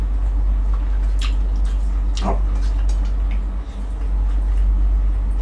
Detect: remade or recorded recorded